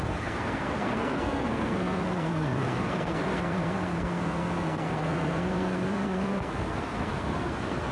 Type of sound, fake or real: fake